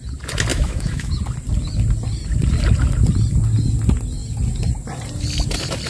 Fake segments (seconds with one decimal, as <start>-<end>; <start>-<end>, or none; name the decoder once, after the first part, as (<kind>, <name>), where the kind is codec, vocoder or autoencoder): 0.5-1.1 (autoencoder, DAC-VAE)